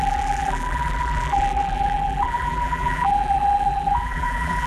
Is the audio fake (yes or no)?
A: yes